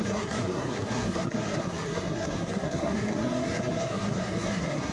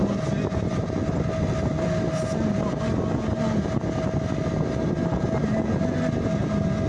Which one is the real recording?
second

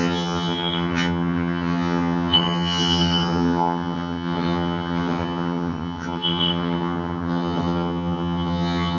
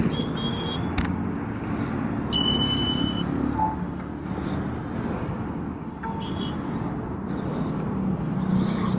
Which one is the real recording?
second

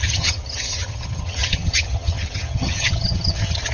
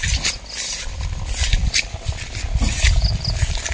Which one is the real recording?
second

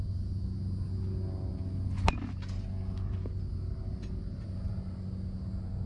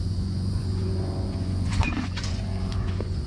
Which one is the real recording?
first